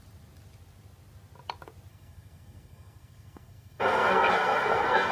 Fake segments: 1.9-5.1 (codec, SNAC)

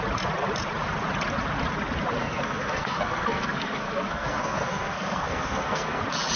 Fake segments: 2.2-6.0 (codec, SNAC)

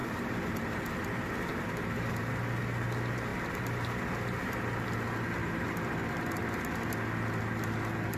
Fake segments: 0.0-0.8 (vocoder, BigVGAN v2); 1.5-2.3

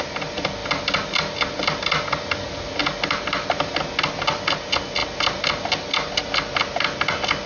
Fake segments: 0.6-3.8 (vocoder, BigVGAN v2); 5.0-6.2